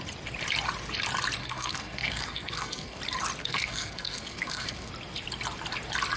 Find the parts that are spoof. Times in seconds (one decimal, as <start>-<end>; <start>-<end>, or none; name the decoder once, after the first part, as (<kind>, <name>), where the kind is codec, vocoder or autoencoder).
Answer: 1.4-3.0 (codec, SNAC); 3.4-4.9